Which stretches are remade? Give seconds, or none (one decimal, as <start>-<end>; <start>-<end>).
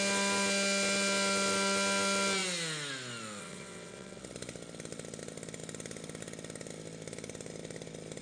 3.4-4.2